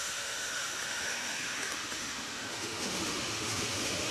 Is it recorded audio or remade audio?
remade